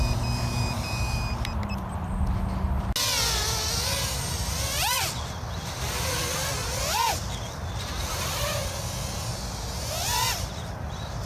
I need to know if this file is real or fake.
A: real